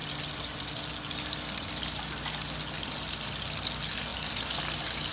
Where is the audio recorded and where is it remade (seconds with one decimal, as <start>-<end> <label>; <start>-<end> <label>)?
0.0-5.1 recorded